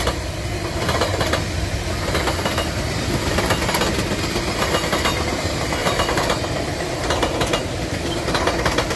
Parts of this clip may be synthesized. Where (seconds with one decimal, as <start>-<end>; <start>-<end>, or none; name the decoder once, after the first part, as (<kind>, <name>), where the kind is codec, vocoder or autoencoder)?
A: 1.1-2.7 (vocoder, BigVGAN v2); 5.8-9.0